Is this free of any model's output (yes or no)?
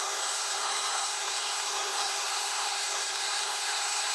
no